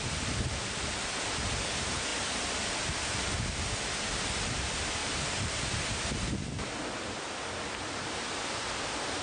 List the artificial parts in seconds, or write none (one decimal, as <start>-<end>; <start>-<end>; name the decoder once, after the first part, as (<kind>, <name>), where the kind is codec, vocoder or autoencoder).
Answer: 5.0-5.6 (vocoder, BigVGAN v2)